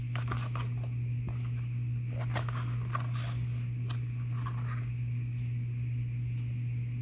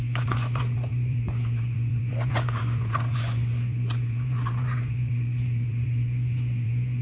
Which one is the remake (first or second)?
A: second